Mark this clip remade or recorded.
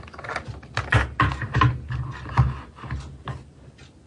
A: recorded